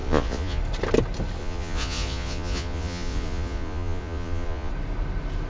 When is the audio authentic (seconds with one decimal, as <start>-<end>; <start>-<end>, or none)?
0.6-1.4; 4.7-5.5